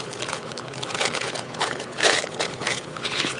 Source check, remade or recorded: remade